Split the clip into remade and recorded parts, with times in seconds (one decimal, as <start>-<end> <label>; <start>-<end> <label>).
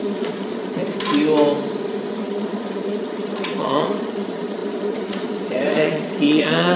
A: 0.0-0.8 remade; 0.8-2.2 recorded; 2.2-6.8 remade